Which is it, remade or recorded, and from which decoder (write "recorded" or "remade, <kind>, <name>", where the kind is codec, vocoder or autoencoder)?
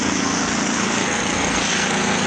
remade, codec, SNAC